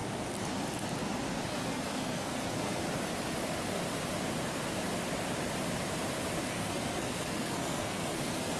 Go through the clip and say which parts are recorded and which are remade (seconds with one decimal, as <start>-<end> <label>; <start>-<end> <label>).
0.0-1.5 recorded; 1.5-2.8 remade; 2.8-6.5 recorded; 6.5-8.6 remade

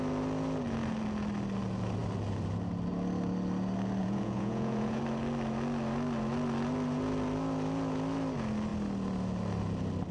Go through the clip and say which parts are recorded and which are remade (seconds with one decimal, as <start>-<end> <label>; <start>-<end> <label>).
0.0-4.0 recorded; 4.0-5.0 remade; 5.0-10.1 recorded

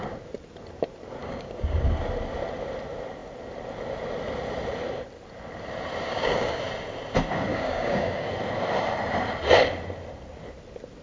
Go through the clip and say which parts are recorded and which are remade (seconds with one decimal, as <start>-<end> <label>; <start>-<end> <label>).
0.0-1.2 recorded; 1.2-1.8 remade; 1.8-6.1 recorded; 6.1-6.6 remade; 6.6-7.5 recorded; 7.5-8.3 remade; 8.3-11.0 recorded

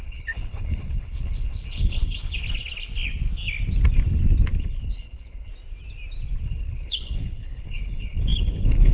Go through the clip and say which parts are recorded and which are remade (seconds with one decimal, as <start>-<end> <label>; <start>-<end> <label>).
0.0-2.4 remade; 2.4-4.6 recorded; 4.6-5.5 remade; 5.5-6.4 recorded; 6.4-8.9 remade